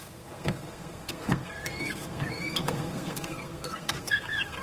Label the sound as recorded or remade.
remade